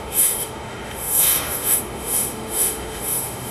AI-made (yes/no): yes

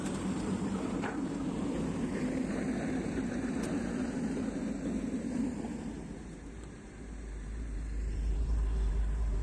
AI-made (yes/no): yes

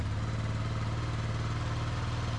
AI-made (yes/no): no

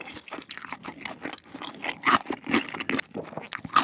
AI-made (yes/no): no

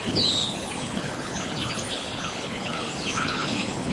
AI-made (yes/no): yes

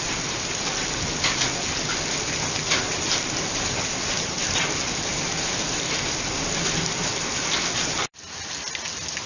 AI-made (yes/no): no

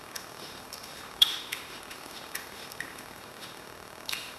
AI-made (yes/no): yes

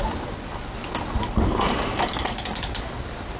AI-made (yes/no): no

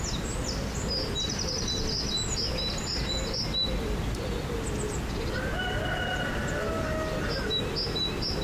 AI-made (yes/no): no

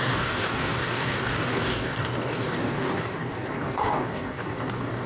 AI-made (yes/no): yes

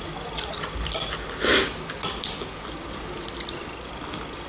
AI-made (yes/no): no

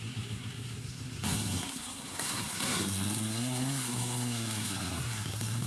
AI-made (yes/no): yes